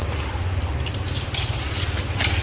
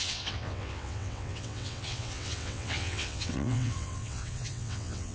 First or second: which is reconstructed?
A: second